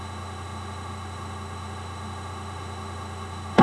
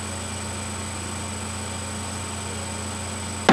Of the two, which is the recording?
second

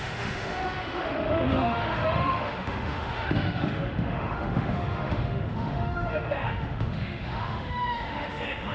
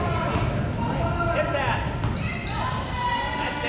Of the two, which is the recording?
second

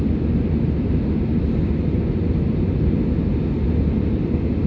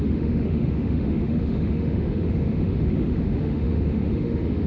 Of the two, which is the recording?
first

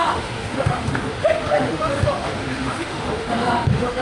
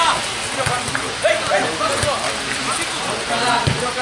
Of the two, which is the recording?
second